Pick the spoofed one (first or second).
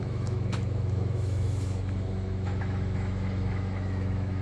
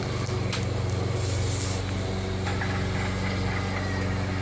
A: first